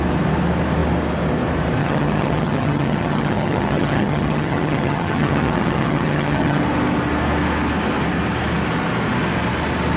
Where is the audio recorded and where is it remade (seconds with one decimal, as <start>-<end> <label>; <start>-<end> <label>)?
0.0-1.8 recorded; 1.8-6.6 remade; 6.6-10.0 recorded